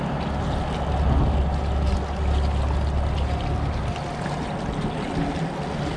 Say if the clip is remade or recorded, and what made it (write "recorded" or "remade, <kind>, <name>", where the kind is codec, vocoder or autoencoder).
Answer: recorded